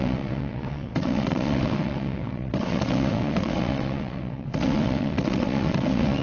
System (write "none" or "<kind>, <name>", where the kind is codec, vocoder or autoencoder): vocoder, WaveNeXt